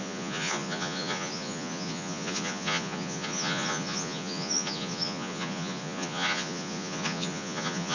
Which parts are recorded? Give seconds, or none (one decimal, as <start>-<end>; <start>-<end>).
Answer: none